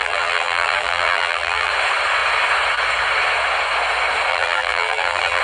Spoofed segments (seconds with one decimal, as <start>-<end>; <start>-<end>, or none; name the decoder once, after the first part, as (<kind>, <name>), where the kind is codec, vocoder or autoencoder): 0.0-1.7 (vocoder, BigVGAN v2); 4.3-5.4